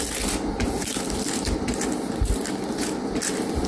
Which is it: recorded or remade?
recorded